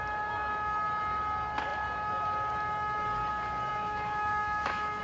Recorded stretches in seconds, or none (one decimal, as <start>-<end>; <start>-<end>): 0.0-3.7